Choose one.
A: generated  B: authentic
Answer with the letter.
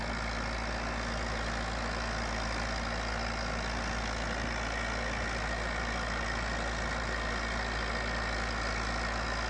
B